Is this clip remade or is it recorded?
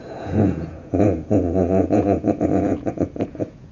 remade